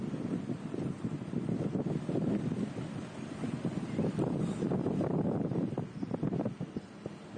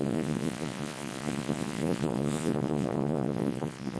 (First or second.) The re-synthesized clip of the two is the second